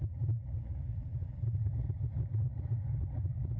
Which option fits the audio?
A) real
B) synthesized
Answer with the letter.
B